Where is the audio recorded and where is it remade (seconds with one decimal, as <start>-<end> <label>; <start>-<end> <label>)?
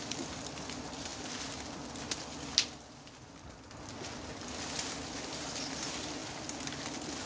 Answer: 0.0-7.3 recorded